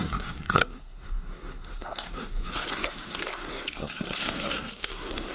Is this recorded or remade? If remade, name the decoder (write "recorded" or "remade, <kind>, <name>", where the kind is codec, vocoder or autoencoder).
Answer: remade, codec, SNAC